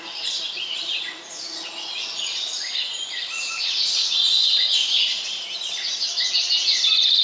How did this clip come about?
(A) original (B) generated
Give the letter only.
B